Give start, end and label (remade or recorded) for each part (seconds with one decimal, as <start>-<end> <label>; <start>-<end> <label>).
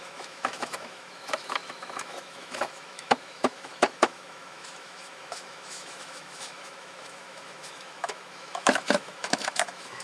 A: 0.0-10.0 remade